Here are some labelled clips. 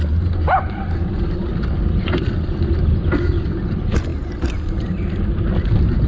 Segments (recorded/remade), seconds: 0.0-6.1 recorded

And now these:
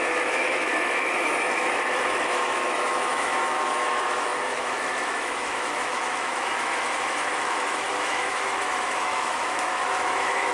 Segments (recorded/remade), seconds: 0.0-10.5 remade

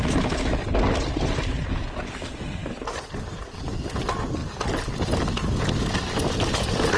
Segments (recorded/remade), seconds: 0.0-7.0 recorded

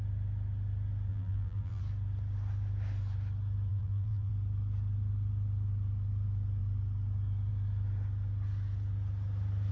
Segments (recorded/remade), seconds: 0.0-1.1 recorded; 1.1-1.8 remade; 1.8-3.7 recorded; 3.7-4.3 remade; 4.3-9.7 recorded

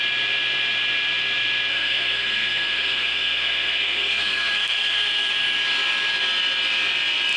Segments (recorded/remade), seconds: 0.0-1.7 recorded; 1.7-5.3 remade; 5.3-7.4 recorded

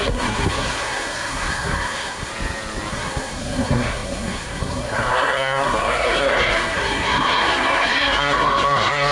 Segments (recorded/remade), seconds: 0.0-2.3 remade; 2.3-2.9 recorded; 2.9-9.1 remade

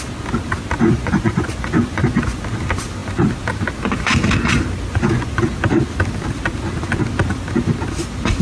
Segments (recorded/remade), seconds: 0.0-0.9 recorded; 0.9-2.4 remade; 2.4-4.9 recorded; 4.9-5.5 remade; 5.5-8.4 recorded

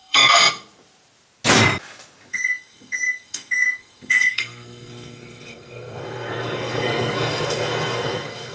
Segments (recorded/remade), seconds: 0.0-0.4 remade; 0.4-2.3 recorded; 2.3-8.5 remade